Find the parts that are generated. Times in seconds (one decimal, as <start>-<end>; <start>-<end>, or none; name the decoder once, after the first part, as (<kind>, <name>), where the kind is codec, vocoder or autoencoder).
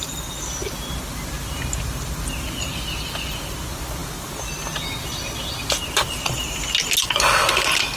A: none